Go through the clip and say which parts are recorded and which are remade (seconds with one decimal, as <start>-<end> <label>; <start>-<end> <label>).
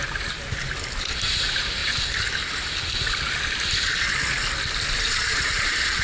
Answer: 0.0-0.4 remade; 0.4-1.0 recorded; 1.0-1.8 remade; 1.8-5.1 recorded; 5.1-6.0 remade